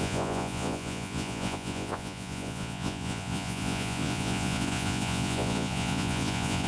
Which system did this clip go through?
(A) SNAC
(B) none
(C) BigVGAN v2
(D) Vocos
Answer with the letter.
D